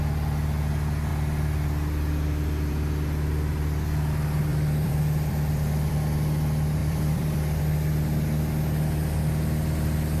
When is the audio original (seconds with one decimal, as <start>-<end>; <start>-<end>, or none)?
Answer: 0.0-4.5; 5.9-6.8; 7.6-10.2

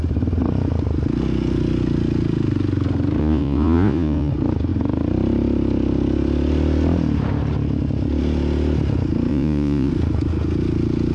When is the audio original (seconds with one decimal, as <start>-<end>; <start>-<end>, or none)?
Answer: 0.0-3.2; 4.3-9.3; 9.9-11.1

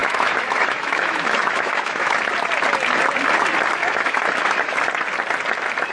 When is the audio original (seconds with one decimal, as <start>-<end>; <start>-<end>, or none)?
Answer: 2.2-3.8; 4.8-5.9